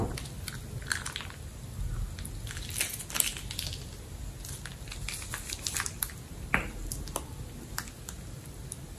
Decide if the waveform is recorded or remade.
recorded